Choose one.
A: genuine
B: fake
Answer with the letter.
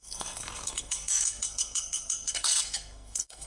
B